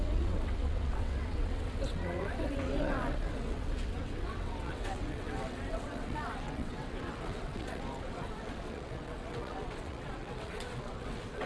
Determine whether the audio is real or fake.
fake